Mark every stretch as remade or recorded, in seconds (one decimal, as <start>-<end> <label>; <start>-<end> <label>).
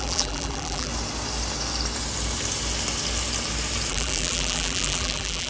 0.0-0.9 remade; 0.9-3.9 recorded; 3.9-5.5 remade